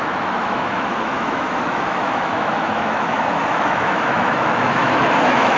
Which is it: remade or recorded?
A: remade